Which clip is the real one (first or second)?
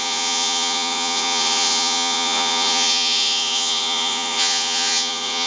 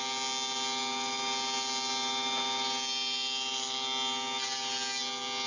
second